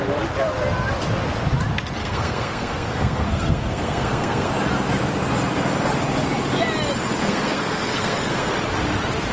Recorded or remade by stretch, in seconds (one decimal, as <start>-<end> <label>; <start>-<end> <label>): 0.0-2.0 recorded; 2.0-4.5 remade; 4.5-7.2 recorded; 7.2-8.5 remade; 8.5-9.3 recorded